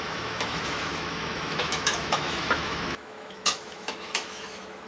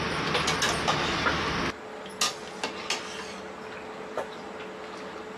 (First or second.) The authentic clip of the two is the second